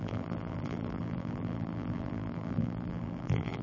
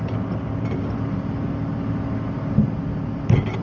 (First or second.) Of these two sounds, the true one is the second